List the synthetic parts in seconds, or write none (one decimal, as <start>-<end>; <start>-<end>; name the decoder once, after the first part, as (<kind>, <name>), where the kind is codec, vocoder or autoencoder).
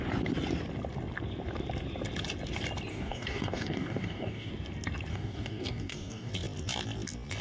2.9-4.5 (codec, DAC); 5.1-6.3